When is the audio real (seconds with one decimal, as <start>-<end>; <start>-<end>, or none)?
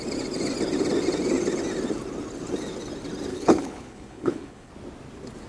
0.0-3.3; 4.7-5.5